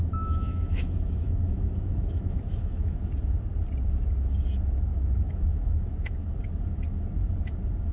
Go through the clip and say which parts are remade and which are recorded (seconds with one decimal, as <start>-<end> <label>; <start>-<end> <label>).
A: 0.0-3.1 remade; 3.1-4.9 recorded; 4.9-6.4 remade; 6.4-7.9 recorded